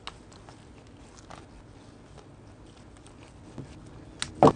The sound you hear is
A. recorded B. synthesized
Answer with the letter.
A